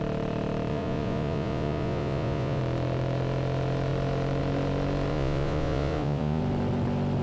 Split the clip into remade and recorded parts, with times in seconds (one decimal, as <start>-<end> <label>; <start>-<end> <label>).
0.0-0.7 recorded; 0.7-2.6 remade; 2.6-5.1 recorded; 5.1-6.4 remade; 6.4-7.2 recorded